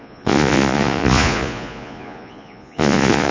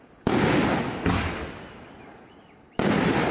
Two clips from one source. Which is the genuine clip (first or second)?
second